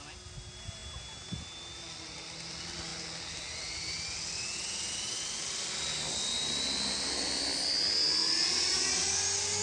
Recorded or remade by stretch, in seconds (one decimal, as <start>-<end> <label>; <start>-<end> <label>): 0.0-8.2 recorded; 8.2-9.1 remade; 9.1-9.6 recorded

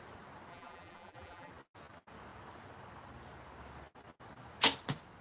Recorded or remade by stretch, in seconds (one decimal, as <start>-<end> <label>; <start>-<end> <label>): 0.0-0.5 recorded; 0.5-1.5 remade; 1.5-5.2 recorded

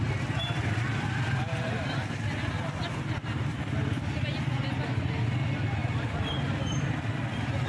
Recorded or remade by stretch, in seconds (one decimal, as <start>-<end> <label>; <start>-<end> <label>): 0.0-5.8 recorded; 5.8-7.0 remade; 7.0-7.7 recorded

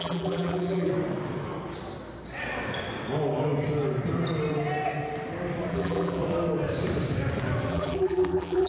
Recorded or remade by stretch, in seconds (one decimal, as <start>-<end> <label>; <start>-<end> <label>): 0.0-0.9 remade; 0.9-5.7 recorded; 5.7-6.2 remade; 6.2-7.7 recorded; 7.7-8.7 remade

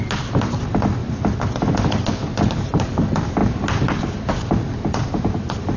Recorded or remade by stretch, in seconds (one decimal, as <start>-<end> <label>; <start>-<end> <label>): 0.0-4.9 recorded; 4.9-5.8 remade

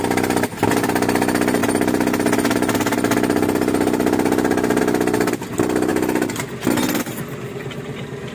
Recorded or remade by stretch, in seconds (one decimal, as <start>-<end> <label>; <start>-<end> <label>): 0.0-8.3 recorded

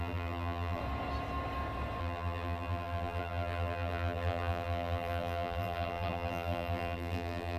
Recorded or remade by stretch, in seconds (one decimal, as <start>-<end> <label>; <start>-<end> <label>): 0.0-0.8 remade; 0.8-2.0 recorded; 2.0-7.6 remade